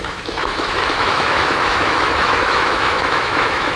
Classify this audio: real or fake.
fake